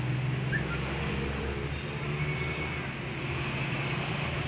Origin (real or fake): real